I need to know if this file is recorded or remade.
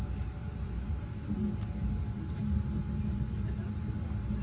recorded